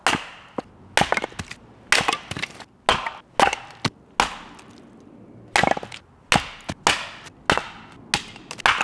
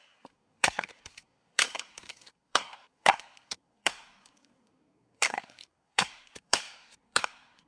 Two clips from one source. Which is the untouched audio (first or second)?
first